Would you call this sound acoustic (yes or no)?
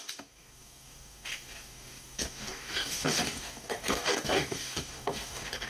no